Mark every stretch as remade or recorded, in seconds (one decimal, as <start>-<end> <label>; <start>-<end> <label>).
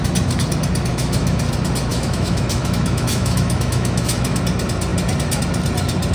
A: 0.0-0.9 recorded; 0.9-1.4 remade; 1.4-1.9 recorded; 1.9-4.4 remade; 4.4-6.1 recorded